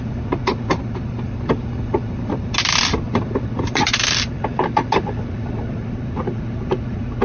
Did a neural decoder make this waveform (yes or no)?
no